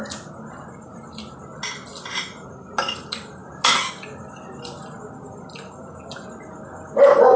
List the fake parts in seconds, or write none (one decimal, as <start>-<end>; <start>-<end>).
none